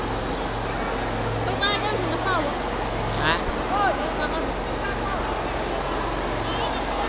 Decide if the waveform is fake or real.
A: real